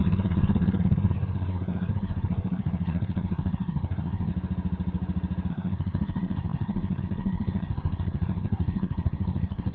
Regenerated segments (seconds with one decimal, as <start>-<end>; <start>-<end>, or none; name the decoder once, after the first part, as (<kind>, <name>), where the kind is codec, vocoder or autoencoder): 0.0-4.3 (codec, SNAC); 5.5-9.7

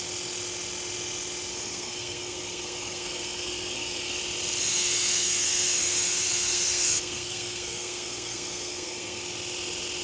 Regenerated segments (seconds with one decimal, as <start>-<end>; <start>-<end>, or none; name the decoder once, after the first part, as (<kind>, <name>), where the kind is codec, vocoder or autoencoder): 1.5-4.2 (codec, SNAC); 4.7-9.2

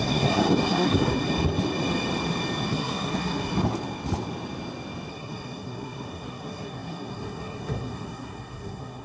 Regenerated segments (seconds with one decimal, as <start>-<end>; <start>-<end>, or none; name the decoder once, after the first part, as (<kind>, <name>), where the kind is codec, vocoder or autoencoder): 0.0-1.2 (codec, SNAC); 2.7-3.5; 5.1-9.0

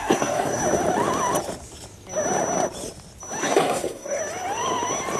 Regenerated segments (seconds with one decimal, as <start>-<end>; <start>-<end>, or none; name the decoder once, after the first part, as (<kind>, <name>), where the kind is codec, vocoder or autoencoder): 0.0-0.6 (codec, SNAC); 3.4-4.2

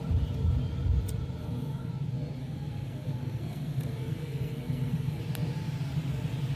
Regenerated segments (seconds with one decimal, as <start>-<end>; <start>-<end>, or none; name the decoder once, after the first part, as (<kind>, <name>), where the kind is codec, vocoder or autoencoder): 1.4-1.9 (codec, SNAC); 2.4-5.2

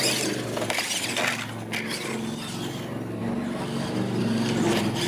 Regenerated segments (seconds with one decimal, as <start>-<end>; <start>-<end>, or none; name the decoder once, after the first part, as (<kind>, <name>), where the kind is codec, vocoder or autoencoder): none